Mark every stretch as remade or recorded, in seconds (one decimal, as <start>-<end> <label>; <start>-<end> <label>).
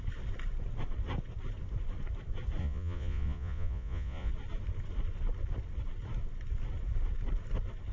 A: 0.0-2.6 recorded; 2.6-4.3 remade; 4.3-7.9 recorded